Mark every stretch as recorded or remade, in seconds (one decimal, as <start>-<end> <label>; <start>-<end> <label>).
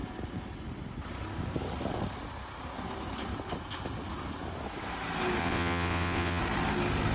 0.0-5.4 recorded; 5.4-6.4 remade; 6.4-7.1 recorded